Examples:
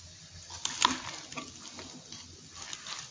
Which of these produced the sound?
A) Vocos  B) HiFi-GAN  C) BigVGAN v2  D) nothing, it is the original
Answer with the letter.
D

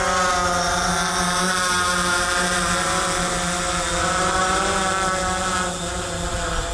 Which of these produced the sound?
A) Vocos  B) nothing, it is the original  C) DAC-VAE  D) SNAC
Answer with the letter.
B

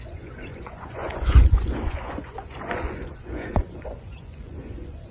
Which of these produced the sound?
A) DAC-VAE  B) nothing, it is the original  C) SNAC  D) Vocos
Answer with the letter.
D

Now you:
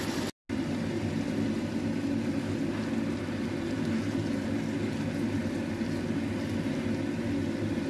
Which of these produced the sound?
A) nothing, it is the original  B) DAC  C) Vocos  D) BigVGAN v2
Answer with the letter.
A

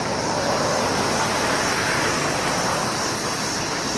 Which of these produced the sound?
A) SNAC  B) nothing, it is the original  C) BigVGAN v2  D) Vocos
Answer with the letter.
B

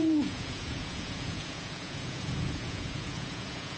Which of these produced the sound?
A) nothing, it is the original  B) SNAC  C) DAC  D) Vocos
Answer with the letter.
D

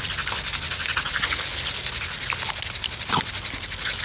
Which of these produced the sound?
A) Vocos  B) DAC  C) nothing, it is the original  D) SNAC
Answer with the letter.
C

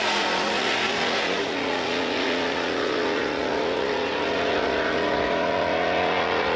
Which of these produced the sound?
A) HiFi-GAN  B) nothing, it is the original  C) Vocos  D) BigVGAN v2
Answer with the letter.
C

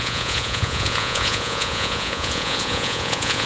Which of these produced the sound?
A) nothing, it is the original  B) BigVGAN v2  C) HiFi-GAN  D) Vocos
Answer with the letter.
D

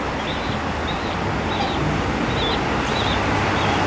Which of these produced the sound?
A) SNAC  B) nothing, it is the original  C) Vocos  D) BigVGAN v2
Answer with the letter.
B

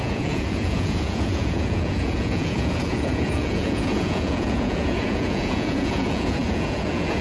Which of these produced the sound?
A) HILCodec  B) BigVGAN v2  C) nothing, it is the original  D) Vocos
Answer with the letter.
D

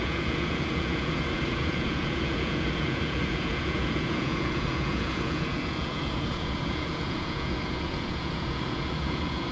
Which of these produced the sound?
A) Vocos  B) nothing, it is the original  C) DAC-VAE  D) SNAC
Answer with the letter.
A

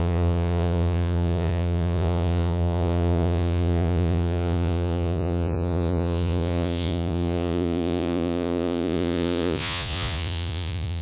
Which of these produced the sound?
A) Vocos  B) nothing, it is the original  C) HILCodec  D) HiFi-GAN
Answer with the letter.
A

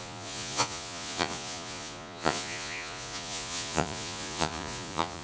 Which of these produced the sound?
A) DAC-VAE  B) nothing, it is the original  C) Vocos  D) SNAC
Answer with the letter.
C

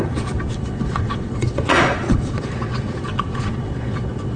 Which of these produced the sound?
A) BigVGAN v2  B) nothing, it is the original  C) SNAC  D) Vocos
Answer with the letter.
D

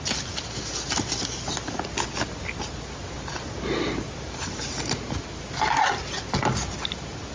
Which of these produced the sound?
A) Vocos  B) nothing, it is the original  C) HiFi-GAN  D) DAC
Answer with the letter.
B